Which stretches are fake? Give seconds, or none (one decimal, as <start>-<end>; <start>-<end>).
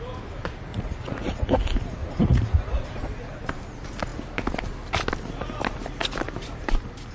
0.7-1.6; 2.0-3.0